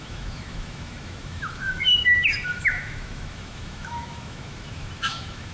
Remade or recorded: remade